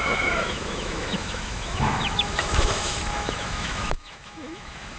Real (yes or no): no